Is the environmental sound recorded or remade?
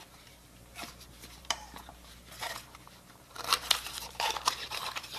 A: remade